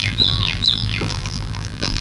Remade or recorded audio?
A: remade